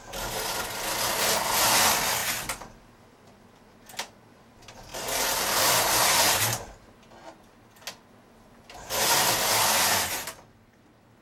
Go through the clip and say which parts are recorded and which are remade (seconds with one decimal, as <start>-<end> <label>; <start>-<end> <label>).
0.0-4.9 recorded; 4.9-5.9 remade; 5.9-11.2 recorded